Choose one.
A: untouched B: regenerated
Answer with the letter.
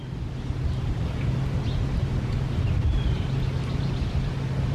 A